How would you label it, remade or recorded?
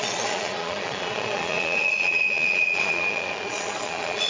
remade